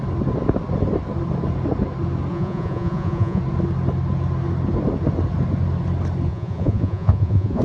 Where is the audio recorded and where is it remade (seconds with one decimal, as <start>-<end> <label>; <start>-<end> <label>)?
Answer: 0.0-2.3 recorded; 2.3-3.4 remade; 3.4-6.3 recorded; 6.3-7.6 remade